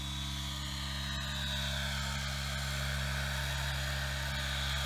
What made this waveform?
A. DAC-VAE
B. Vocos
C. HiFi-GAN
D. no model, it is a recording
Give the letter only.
D